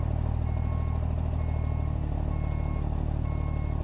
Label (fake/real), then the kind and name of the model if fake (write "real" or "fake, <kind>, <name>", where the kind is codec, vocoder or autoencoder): real